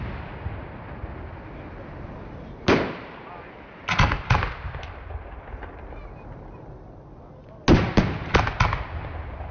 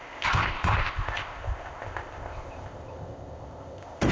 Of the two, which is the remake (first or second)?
second